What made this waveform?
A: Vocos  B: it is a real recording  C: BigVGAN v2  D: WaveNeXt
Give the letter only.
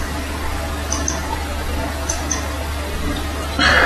B